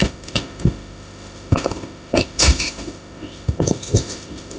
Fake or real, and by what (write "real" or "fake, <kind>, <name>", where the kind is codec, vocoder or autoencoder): fake, autoencoder, DAC-VAE